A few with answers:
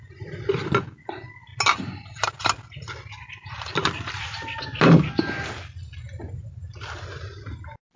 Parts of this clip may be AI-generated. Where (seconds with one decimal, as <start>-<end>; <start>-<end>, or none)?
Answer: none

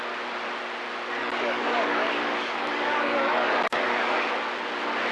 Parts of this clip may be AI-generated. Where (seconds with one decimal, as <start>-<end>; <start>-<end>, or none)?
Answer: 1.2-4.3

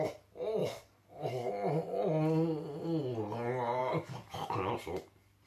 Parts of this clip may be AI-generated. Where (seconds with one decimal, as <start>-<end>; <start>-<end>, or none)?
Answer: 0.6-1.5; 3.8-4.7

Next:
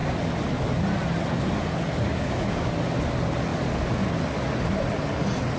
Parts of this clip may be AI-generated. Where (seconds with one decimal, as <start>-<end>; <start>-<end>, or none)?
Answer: 2.1-2.7

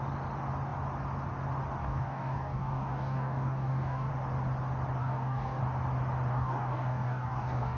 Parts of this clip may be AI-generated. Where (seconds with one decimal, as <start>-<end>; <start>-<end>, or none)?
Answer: 1.8-4.1; 5.0-5.6; 6.3-7.8

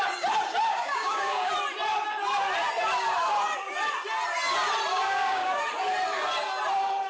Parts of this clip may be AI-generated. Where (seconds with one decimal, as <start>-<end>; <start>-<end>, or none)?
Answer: 0.7-1.5; 4.9-5.6

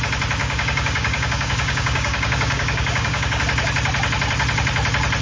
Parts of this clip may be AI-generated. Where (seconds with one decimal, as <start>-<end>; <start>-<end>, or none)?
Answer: 0.4-3.4

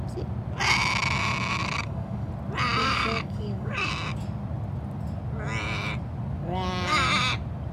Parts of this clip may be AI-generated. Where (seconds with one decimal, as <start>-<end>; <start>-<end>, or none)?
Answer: 1.6-2.3; 2.8-3.9